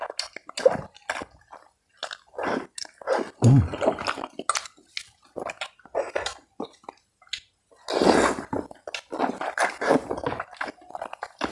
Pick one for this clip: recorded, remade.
recorded